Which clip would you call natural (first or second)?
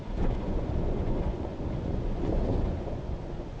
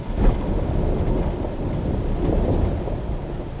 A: second